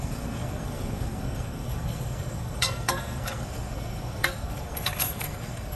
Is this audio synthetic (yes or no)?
yes